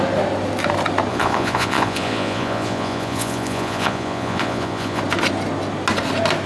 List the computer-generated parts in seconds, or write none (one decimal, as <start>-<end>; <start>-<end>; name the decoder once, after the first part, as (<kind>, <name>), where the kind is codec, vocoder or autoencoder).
1.1-5.0 (vocoder, Vocos)